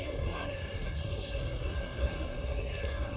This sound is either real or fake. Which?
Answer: fake